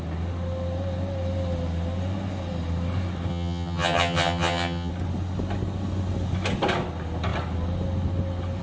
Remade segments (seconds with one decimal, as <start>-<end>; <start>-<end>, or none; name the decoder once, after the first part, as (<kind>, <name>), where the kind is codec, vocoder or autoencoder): 3.3-4.9 (vocoder, HiFi-GAN)

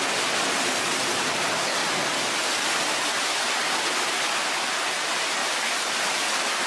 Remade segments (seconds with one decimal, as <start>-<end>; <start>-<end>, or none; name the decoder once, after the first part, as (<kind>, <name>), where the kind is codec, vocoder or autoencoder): 5.4-6.2 (vocoder, BigVGAN v2)